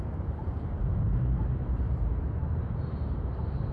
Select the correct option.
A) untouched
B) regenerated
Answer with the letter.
B